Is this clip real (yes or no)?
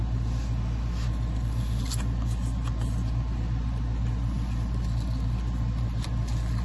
yes